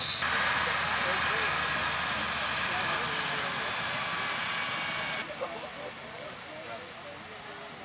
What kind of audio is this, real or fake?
real